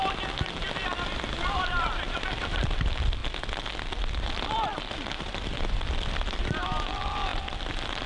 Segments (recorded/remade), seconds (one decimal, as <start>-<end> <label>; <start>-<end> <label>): 0.0-1.4 recorded; 1.4-8.1 remade